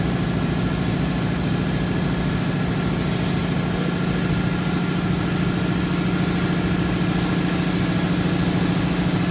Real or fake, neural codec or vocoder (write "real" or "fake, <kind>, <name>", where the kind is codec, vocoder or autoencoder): real